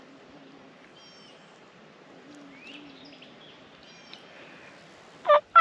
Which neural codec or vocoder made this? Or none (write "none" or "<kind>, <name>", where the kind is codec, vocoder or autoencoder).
none